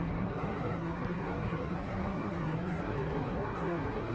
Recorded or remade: remade